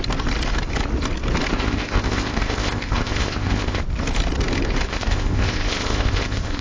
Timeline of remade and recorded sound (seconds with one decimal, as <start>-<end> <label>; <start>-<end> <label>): 0.0-1.5 recorded; 1.5-3.8 remade; 3.8-4.9 recorded; 4.9-6.6 remade